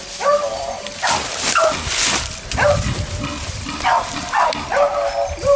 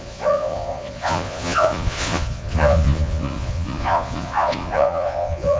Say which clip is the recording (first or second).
first